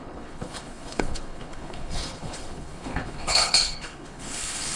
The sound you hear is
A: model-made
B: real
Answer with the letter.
A